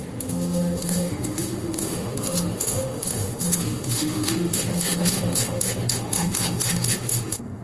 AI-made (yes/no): yes